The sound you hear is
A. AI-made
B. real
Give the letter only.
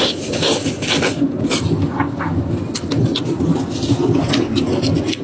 B